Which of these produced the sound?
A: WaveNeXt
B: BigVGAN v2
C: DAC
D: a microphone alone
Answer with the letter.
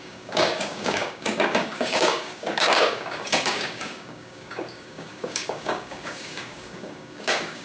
C